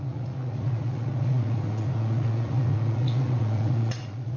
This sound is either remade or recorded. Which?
remade